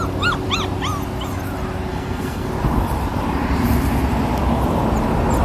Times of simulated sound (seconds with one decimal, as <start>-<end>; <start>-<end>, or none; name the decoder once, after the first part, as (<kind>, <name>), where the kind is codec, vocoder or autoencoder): 1.9-2.5 (codec, SNAC)